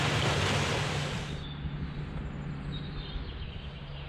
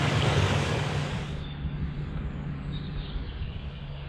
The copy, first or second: second